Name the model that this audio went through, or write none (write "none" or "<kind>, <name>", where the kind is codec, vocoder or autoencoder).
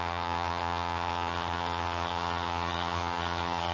vocoder, HiFi-GAN